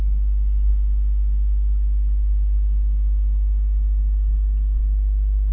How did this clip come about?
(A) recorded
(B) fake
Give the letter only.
A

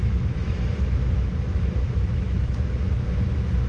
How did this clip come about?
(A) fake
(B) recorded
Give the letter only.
A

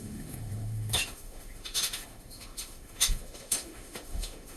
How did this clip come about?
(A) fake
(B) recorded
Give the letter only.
A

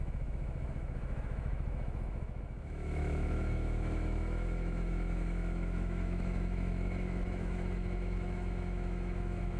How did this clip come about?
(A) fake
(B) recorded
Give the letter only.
A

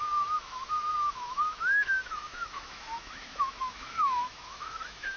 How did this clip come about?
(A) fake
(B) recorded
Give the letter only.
A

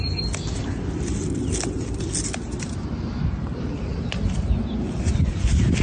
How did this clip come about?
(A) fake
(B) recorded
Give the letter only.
B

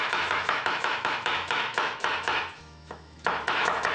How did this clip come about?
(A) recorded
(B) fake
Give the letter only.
B